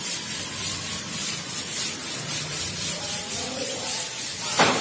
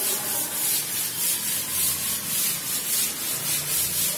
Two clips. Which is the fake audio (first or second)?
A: first